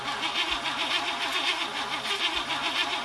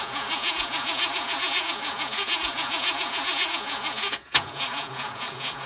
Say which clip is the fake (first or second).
second